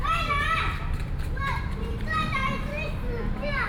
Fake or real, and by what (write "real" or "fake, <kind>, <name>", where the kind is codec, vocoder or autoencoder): fake, vocoder, BigVGAN v2